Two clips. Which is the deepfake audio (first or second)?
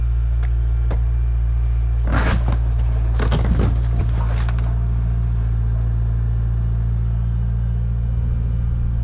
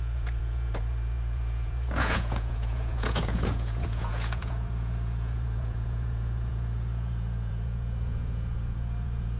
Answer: second